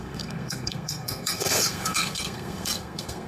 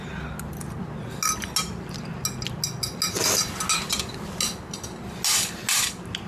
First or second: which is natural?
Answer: second